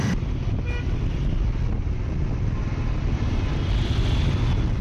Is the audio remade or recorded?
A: recorded